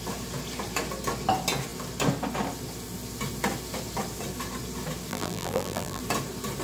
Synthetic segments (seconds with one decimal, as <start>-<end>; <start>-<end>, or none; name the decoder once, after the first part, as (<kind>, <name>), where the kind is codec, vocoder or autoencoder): 5.1-6.0 (vocoder, BigVGAN v2)